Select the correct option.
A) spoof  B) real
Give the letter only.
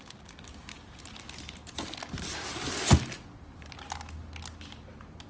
B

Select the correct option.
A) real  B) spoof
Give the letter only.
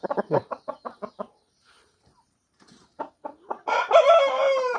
B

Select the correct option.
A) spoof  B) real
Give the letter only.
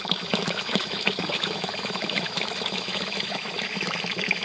A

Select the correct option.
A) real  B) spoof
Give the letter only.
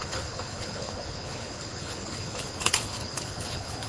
B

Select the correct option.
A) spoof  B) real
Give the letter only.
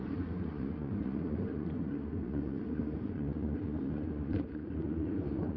A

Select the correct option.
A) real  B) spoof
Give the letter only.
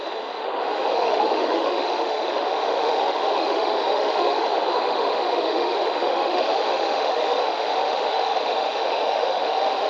B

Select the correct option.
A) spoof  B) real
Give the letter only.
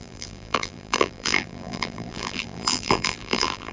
A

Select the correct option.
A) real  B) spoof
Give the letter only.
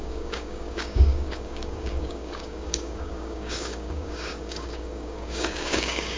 B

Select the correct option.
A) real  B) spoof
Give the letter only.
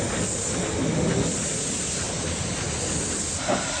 A